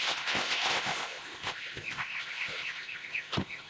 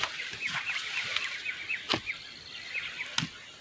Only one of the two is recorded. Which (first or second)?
second